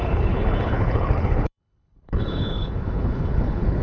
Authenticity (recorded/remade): remade